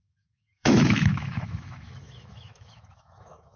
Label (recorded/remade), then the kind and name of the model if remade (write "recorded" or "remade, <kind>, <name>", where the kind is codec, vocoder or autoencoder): remade, autoencoder, DAC-VAE